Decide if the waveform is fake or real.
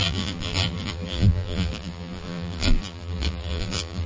fake